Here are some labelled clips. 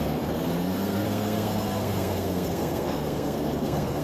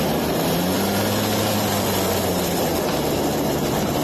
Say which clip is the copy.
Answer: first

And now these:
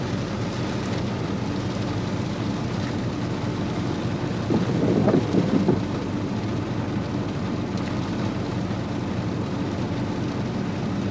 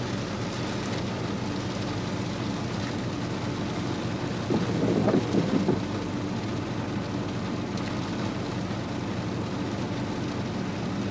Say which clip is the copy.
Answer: first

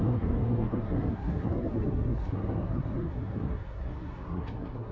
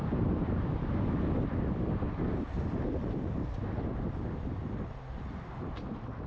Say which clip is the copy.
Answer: first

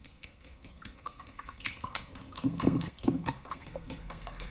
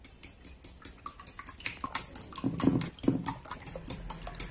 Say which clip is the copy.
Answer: first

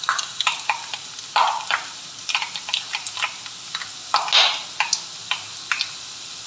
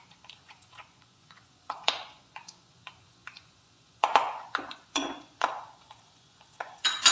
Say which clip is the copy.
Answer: second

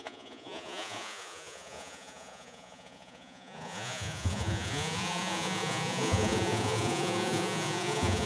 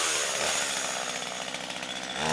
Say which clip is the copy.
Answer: first